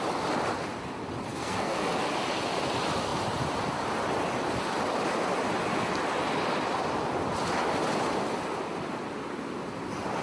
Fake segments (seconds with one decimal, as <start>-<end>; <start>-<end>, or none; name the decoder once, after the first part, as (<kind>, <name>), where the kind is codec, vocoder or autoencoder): 1.3-2.0 (codec, SNAC)